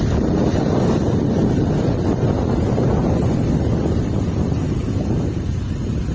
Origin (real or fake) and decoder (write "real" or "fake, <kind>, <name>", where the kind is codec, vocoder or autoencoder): real